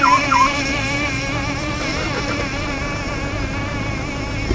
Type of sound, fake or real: fake